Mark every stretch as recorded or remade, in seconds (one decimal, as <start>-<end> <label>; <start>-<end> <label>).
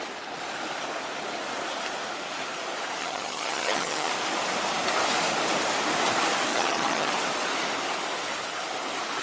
0.0-3.0 recorded; 3.0-4.1 remade; 4.1-6.5 recorded; 6.5-7.1 remade; 7.1-9.2 recorded